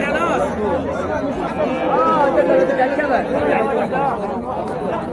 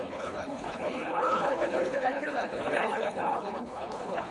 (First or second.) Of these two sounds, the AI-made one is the second